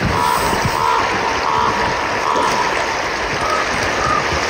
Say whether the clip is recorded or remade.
recorded